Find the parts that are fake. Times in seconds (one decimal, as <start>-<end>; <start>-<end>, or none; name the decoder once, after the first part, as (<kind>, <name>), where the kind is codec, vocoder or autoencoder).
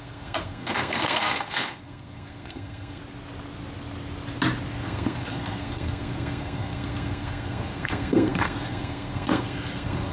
0.0-3.0 (codec, SNAC); 4.7-10.1